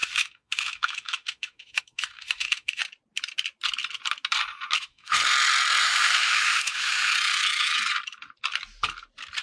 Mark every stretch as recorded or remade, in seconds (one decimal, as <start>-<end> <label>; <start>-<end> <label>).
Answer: 0.0-2.8 remade; 2.8-4.8 recorded; 4.8-5.2 remade; 5.2-5.8 recorded; 5.8-7.1 remade; 7.1-9.4 recorded